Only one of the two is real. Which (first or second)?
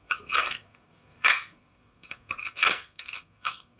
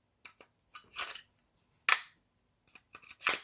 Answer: second